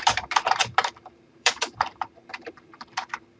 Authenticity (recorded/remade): remade